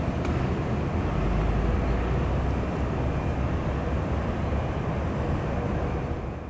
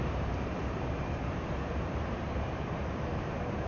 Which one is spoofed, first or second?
second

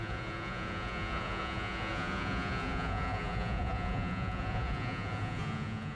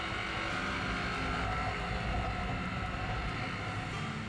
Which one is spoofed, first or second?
first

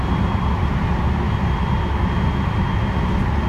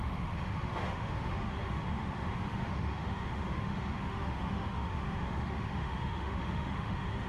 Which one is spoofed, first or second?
second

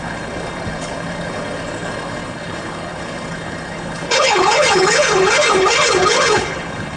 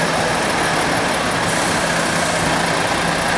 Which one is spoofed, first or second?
first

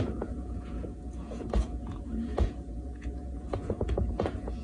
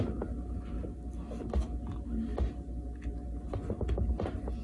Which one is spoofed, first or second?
first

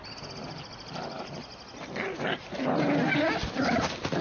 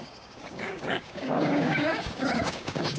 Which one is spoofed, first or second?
second